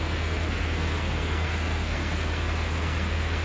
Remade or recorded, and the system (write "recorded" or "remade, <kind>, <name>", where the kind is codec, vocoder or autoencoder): remade, codec, SNAC